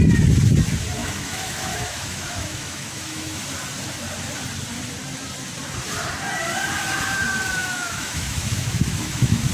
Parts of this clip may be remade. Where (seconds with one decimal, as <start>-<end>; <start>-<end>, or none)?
1.0-3.4; 7.6-9.5

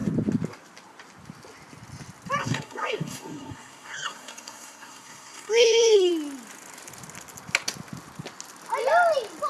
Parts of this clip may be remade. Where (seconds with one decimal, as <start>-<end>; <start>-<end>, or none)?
2.4-6.1